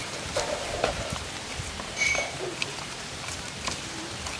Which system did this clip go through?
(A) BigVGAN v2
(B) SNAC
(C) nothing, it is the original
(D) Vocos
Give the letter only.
A